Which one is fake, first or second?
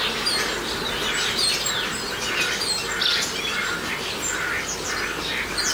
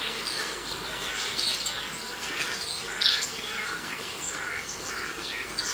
second